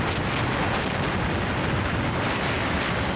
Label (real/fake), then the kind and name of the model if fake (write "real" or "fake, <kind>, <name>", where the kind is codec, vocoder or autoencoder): real